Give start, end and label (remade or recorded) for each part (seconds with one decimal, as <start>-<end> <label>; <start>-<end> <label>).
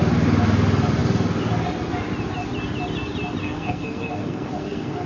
0.0-3.4 recorded; 3.4-5.1 remade